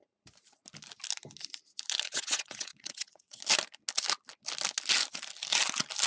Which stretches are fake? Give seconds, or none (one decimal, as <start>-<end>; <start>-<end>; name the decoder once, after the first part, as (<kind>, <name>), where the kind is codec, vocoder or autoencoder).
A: 2.1-3.4 (vocoder, WaveNeXt)